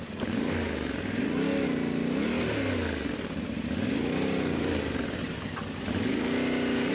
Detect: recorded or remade recorded